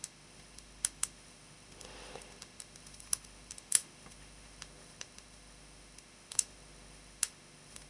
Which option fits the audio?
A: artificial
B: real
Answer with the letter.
A